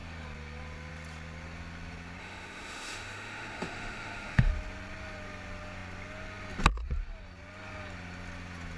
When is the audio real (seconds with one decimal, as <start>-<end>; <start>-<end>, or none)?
0.0-2.2; 4.5-8.8